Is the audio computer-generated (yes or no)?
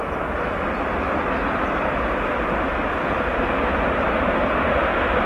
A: no